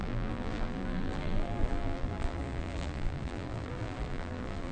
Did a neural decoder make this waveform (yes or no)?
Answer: yes